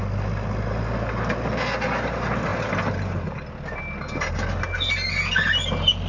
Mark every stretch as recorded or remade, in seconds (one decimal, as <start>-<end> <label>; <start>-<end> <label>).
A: 0.0-6.1 recorded